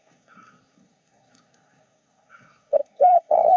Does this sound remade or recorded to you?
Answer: remade